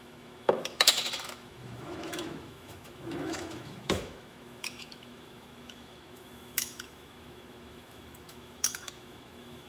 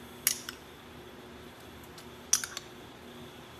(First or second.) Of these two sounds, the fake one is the first